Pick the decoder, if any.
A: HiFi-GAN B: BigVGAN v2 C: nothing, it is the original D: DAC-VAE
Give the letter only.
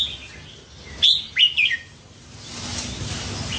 C